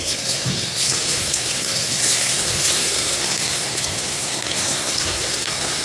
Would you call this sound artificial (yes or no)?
yes